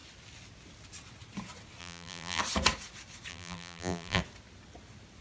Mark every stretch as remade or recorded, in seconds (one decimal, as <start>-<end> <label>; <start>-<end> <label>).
0.0-1.8 recorded; 1.8-2.4 remade; 2.4-3.3 recorded; 3.3-4.2 remade; 4.2-5.2 recorded